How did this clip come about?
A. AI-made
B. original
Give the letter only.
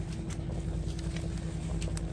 B